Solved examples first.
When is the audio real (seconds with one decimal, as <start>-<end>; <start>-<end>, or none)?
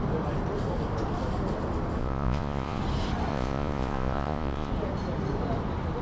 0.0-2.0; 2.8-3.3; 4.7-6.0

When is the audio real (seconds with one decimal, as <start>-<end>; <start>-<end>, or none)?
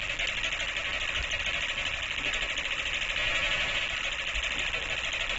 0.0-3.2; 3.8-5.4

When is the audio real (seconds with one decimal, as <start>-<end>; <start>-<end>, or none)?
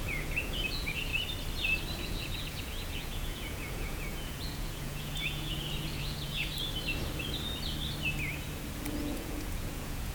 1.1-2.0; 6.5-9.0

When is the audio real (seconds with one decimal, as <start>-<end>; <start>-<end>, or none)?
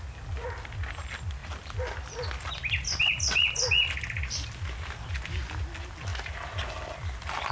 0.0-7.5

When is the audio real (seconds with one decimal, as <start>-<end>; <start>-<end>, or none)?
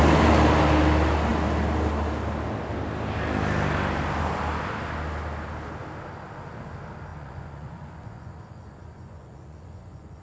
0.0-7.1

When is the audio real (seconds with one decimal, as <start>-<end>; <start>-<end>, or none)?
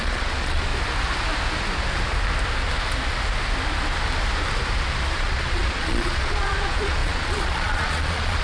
0.7-5.2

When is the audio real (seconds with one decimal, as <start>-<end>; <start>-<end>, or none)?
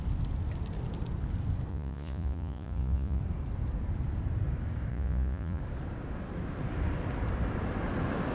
0.0-1.7; 3.2-4.9; 5.6-8.3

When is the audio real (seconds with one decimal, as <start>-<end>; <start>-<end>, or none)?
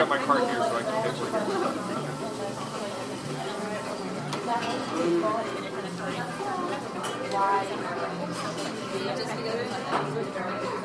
0.0-4.5; 5.1-10.8